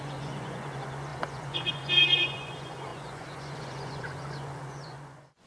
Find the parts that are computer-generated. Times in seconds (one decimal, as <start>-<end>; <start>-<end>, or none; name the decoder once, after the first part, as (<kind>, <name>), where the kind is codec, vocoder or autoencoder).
0.0-5.5 (vocoder, Vocos)